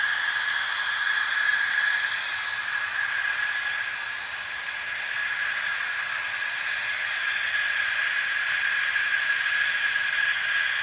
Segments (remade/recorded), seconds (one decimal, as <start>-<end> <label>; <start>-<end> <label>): 0.0-10.8 recorded